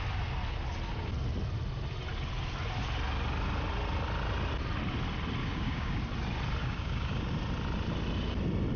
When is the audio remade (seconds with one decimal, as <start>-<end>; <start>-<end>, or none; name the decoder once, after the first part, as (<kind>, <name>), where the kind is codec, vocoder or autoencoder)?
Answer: 5.4-6.0 (codec, DAC); 6.6-7.3